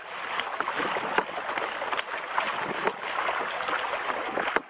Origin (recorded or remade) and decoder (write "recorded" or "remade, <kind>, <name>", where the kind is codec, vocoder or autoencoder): recorded